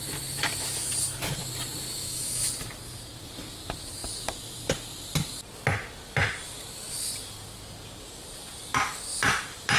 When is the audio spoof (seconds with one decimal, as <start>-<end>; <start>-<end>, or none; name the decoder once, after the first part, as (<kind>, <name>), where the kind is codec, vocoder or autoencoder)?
1.9-2.5 (autoencoder, DAC-VAE)